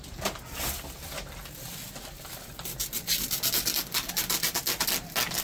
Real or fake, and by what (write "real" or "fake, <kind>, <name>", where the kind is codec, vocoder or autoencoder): real